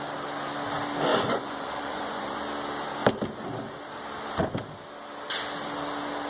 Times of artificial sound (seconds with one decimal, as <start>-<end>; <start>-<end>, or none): 1.1-2.4